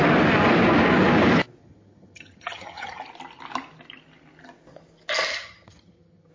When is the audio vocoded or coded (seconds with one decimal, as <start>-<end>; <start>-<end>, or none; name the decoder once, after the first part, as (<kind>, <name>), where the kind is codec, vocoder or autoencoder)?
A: 1.6-3.0 (vocoder, HiFi-GAN); 5.3-6.3